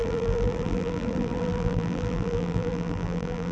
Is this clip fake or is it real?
fake